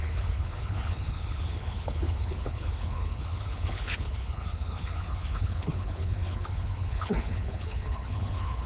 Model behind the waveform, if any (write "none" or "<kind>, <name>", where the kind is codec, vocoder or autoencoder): codec, HILCodec